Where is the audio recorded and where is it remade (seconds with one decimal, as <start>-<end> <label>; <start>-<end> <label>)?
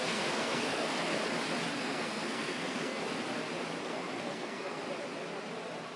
0.0-1.2 remade; 1.2-1.8 recorded; 1.8-3.0 remade; 3.0-3.8 recorded; 3.8-4.8 remade; 4.8-6.0 recorded